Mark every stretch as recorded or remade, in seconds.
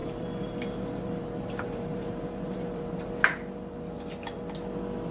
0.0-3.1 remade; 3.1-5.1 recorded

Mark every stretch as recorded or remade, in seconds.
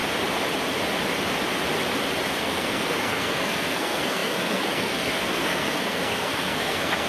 0.0-2.4 recorded; 2.4-7.1 remade